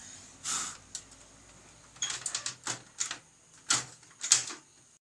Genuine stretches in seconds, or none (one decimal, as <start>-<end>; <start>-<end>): 0.0-5.2